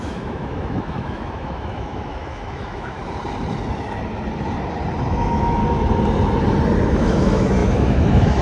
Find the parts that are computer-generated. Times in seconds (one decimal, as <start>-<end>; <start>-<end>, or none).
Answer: 0.0-3.0; 5.1-5.6; 6.9-8.4